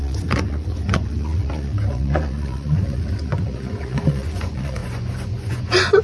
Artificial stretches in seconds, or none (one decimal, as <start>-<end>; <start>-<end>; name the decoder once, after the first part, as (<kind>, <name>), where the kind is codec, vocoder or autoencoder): 0.0-6.0 (vocoder, Vocos)